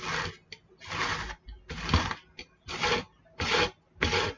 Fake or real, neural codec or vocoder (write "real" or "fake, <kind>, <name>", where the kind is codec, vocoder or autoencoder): real